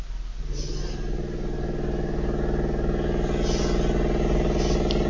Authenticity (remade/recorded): recorded